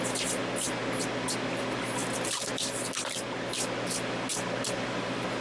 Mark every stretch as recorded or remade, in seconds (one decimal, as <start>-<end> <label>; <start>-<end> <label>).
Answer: 0.0-2.0 recorded; 2.0-3.2 remade; 3.2-4.3 recorded; 4.3-4.8 remade; 4.8-5.4 recorded